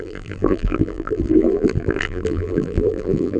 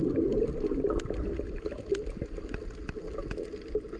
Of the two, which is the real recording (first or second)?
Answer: second